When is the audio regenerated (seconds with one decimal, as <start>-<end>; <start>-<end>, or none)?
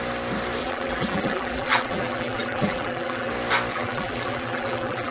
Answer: 0.6-3.3; 3.7-5.1